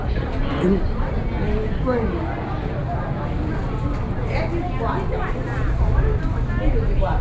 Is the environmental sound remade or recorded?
recorded